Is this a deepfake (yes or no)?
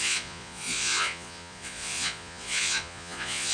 yes